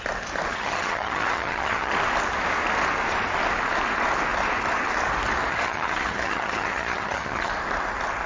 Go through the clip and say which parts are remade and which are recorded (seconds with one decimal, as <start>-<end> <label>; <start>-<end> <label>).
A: 0.0-0.5 recorded; 0.5-1.9 remade; 1.9-5.5 recorded; 5.5-7.5 remade; 7.5-8.3 recorded